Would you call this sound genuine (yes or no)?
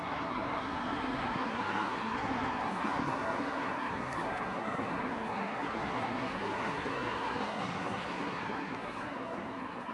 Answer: no